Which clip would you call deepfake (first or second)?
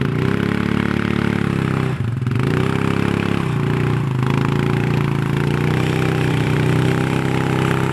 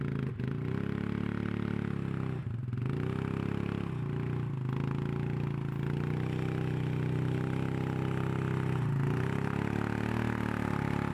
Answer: first